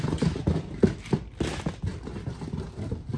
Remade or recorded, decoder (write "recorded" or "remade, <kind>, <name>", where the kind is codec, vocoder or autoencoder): recorded